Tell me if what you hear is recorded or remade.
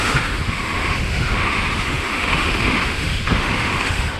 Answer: remade